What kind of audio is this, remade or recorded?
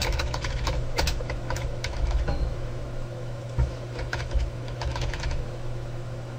remade